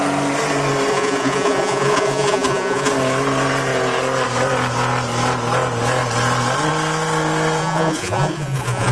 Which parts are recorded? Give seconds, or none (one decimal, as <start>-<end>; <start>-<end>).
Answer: 0.0-0.9; 2.9-7.6

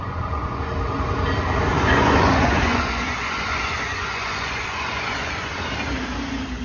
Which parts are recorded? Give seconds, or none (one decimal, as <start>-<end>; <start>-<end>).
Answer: 0.7-1.7; 5.7-6.6

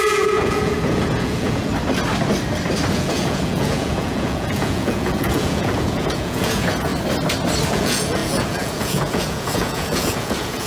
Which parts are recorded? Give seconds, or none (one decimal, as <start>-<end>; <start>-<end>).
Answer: 1.7-2.9; 6.9-7.7

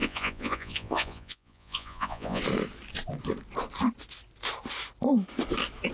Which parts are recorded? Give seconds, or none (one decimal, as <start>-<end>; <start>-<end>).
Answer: 2.4-5.9

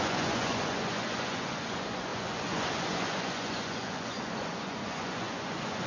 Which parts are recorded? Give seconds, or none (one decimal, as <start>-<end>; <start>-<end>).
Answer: none

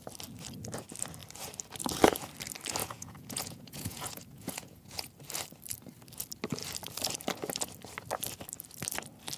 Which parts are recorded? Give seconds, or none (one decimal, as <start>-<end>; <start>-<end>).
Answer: 0.0-2.8; 5.1-9.4